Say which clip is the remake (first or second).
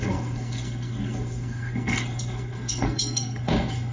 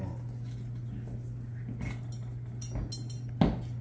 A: first